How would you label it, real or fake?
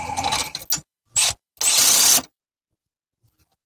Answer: real